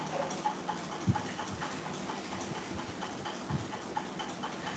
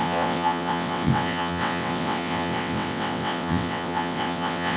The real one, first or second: first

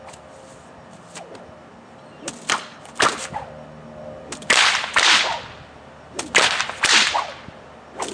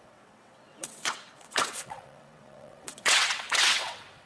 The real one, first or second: first